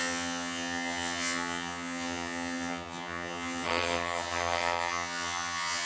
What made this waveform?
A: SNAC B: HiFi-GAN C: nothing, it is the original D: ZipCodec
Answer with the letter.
B